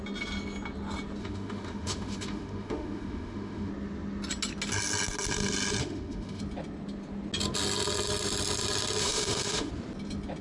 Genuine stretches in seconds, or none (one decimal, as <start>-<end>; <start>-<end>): 0.0-1.2; 3.7-5.8; 6.4-9.0; 9.7-10.4